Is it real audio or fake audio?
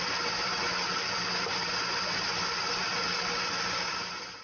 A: real